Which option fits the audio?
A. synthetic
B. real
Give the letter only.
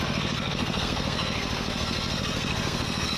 A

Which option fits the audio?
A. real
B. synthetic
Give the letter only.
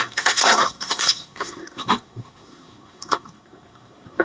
B